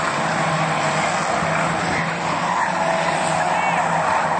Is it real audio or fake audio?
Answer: real